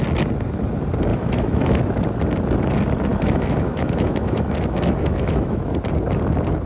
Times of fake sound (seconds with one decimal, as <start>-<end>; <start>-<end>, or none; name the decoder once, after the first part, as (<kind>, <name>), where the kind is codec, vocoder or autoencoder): 1.1-1.8 (autoencoder, DAC-VAE); 3.1-5.7